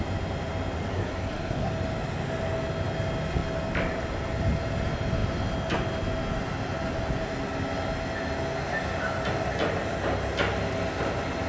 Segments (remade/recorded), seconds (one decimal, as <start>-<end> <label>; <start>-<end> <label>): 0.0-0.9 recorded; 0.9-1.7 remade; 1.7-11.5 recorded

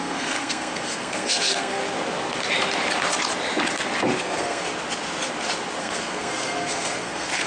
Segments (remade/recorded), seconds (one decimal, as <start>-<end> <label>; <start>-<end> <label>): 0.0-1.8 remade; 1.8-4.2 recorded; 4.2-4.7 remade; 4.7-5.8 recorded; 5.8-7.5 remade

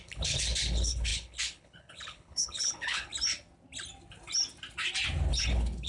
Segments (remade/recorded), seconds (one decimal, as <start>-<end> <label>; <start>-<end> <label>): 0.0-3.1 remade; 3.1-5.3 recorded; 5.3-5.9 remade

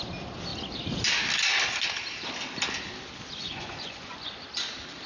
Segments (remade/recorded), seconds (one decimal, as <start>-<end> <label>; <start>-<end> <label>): 0.0-3.4 recorded; 3.4-4.3 remade; 4.3-5.1 recorded